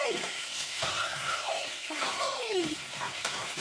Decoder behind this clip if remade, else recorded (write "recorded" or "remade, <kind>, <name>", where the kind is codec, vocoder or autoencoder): remade, codec, SNAC